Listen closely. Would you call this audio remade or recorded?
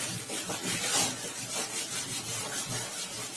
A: recorded